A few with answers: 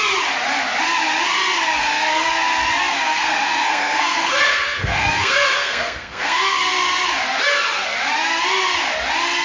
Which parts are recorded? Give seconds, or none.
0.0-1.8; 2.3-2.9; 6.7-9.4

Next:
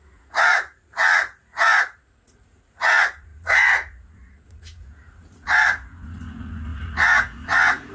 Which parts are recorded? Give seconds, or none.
none

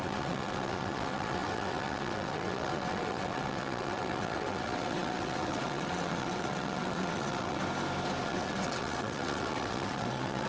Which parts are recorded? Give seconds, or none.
7.6-8.2

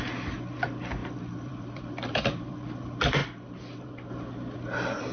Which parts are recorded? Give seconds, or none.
0.0-1.0; 2.7-3.2; 4.1-5.1

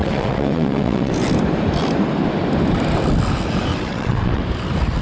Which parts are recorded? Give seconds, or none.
1.1-3.7; 4.4-5.0

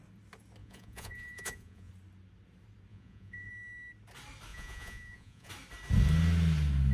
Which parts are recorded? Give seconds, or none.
0.0-0.6; 1.9-2.9; 3.5-4.5; 5.5-6.9

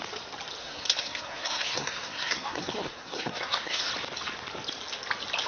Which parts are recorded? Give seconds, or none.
0.0-0.6; 3.9-5.5

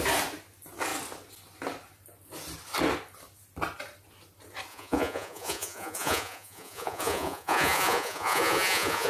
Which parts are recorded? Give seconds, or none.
0.0-4.7